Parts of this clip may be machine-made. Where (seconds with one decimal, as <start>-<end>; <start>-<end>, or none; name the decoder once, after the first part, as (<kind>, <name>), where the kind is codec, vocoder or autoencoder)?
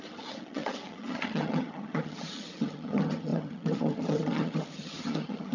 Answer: 0.0-5.5 (vocoder, HiFi-GAN)